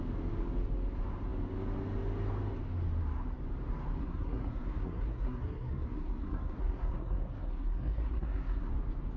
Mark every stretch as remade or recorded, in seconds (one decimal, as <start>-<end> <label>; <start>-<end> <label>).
0.0-4.0 recorded; 4.0-8.7 remade; 8.7-9.2 recorded